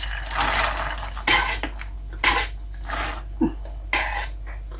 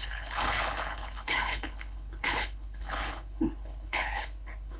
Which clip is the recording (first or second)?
first